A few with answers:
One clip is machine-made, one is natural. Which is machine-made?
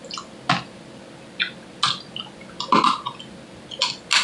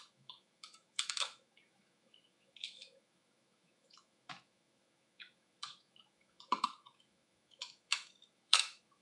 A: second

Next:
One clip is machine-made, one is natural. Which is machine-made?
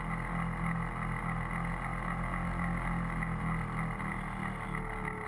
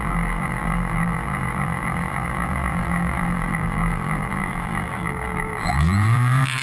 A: second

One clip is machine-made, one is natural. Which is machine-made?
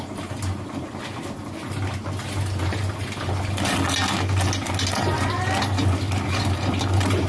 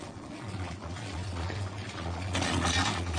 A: second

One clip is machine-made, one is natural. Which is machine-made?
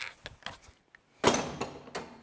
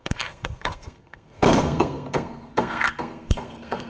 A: second